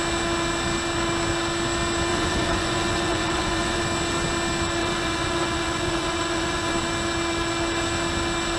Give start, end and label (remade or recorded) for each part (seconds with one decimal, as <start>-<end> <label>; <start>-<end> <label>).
0.0-2.1 recorded; 2.1-3.8 remade; 3.8-4.8 recorded; 4.8-6.7 remade; 6.7-8.6 recorded